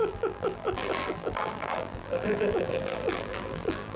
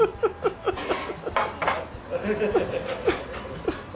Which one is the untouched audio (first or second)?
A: second